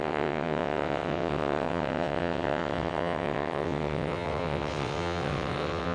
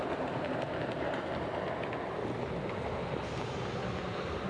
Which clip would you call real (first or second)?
second